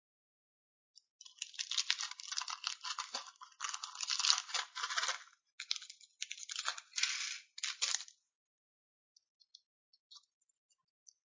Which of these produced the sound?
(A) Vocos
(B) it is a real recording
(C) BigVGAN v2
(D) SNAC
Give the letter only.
B